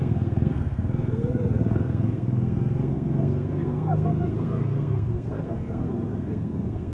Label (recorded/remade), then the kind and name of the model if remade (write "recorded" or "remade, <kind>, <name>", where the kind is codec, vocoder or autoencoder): remade, codec, SNAC